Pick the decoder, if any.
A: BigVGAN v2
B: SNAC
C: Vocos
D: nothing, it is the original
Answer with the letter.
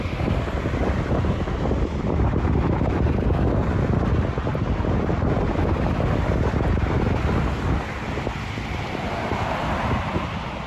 D